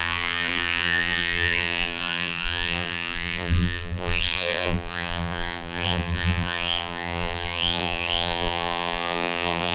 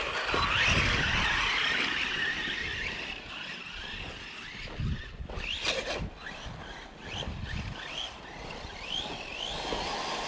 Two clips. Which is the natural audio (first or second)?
second